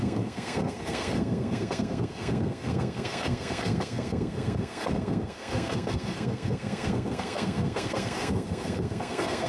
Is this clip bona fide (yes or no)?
no